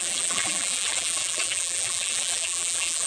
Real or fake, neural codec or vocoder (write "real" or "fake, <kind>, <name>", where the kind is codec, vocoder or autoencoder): fake, vocoder, BigVGAN v2